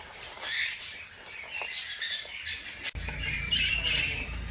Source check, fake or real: fake